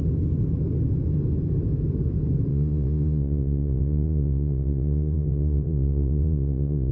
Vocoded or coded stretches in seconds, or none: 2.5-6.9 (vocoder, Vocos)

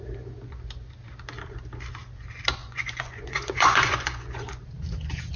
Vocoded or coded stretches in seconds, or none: 2.6-4.6 (vocoder, Vocos)